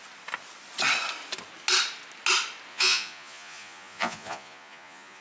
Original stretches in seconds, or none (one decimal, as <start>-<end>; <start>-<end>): 0.0-2.7